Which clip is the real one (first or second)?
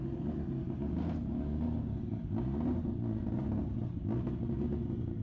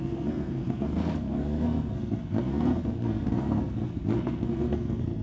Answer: first